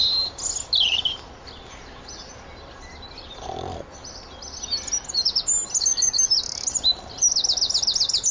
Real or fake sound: real